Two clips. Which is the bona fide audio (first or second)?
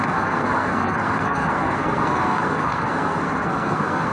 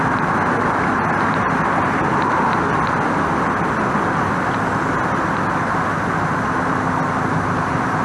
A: second